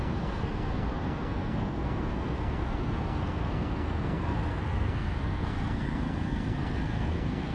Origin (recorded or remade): remade